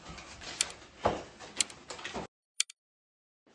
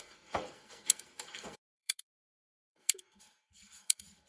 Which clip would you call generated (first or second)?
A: second